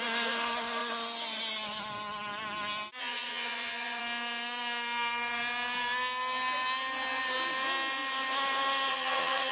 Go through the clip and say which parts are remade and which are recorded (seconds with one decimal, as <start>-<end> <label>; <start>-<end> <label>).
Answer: 0.0-3.0 recorded; 3.0-4.0 remade; 4.0-8.9 recorded; 8.9-9.5 remade